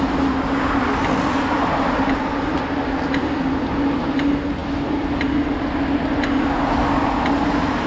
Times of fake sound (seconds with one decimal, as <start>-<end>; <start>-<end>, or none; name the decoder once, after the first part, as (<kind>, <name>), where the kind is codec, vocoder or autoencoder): none